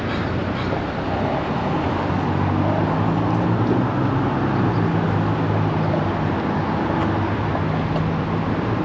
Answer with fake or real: real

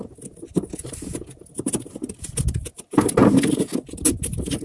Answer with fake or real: real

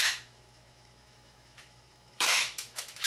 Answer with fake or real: fake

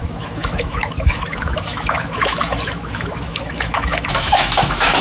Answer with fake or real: fake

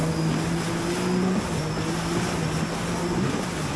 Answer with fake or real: real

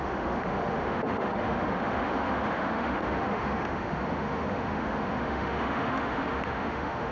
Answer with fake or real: fake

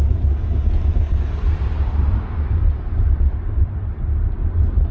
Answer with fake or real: real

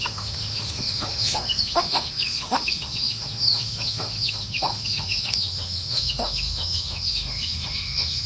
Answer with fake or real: fake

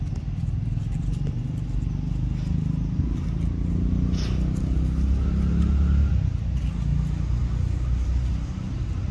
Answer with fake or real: real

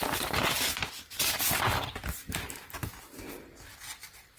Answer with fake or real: real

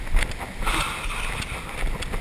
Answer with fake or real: real